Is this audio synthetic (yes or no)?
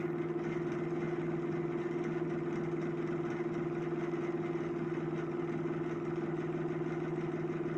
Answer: no